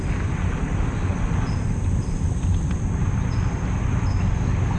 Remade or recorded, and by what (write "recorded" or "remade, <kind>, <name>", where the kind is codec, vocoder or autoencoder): recorded